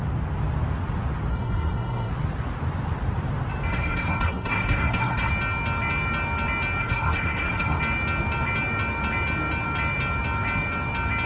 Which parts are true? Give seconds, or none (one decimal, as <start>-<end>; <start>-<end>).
0.0-1.3; 2.1-3.7; 5.3-6.8; 7.8-11.3